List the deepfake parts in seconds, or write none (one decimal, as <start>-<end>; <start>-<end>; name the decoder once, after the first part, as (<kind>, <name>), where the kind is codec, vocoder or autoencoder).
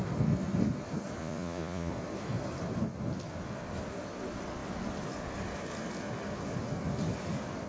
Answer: 1.2-1.9 (vocoder, Vocos)